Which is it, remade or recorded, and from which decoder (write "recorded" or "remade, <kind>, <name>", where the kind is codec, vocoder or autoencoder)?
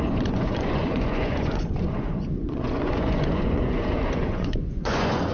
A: remade, vocoder, Vocos